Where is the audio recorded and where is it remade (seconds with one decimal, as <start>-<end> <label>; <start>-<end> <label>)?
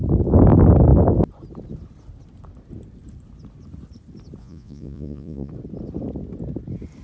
0.0-4.4 recorded; 4.4-5.5 remade; 5.5-7.0 recorded